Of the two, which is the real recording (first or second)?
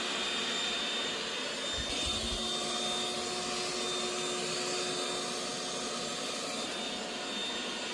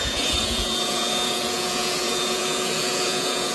first